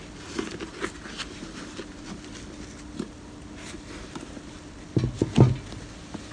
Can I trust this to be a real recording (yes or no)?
yes